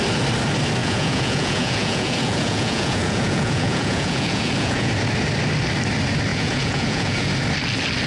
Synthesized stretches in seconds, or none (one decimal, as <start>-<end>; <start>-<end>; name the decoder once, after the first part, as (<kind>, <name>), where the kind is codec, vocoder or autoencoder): 0.8-4.9 (vocoder, Vocos); 6.3-7.3